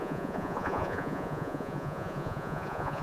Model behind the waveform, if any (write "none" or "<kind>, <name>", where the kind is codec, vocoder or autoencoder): vocoder, Vocos